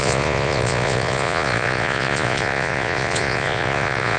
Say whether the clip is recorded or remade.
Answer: remade